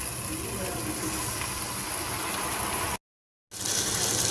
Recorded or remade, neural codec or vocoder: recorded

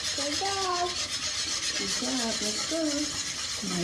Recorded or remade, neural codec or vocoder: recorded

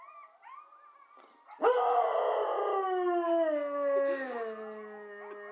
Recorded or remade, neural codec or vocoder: recorded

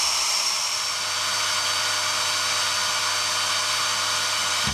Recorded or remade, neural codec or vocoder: recorded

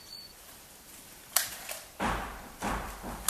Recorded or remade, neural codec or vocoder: remade, vocoder, BigVGAN v2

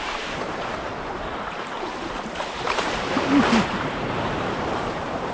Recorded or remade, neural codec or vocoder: remade, vocoder, BigVGAN v2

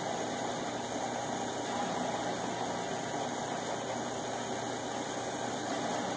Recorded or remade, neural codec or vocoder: recorded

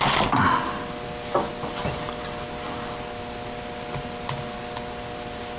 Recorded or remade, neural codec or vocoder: recorded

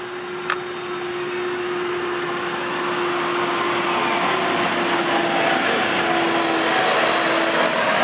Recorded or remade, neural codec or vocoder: recorded